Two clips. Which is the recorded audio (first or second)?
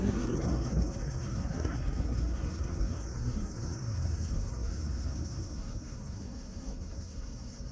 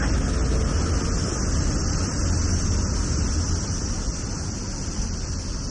second